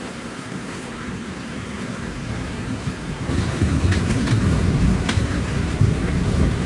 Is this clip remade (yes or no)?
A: yes